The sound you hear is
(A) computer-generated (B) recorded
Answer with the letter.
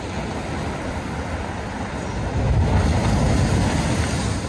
B